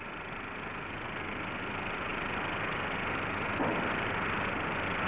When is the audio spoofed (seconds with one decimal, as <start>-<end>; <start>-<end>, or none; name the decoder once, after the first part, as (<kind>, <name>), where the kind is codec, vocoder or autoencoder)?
none